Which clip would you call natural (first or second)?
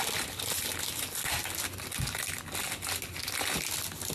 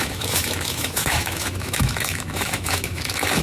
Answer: first